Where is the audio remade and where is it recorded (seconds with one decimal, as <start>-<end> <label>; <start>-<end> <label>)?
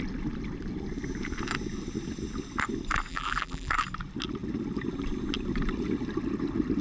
0.0-3.1 recorded; 3.1-3.7 remade; 3.7-6.8 recorded